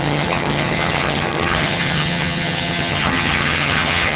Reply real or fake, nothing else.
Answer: fake